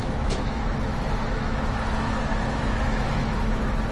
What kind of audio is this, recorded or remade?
remade